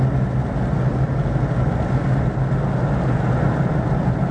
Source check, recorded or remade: recorded